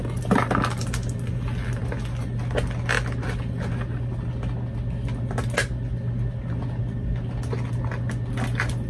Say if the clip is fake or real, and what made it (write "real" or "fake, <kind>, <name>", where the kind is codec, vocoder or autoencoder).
real